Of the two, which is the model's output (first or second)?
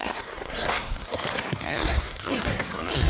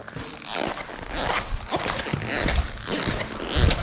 first